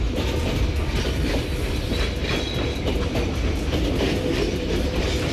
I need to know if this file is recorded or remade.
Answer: recorded